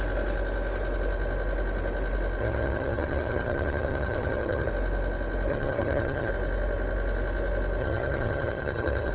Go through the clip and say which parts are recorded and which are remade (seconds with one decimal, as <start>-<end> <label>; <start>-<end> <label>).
0.0-2.4 recorded; 2.4-4.7 remade; 4.7-5.5 recorded; 5.5-6.3 remade; 6.3-7.8 recorded; 7.8-9.1 remade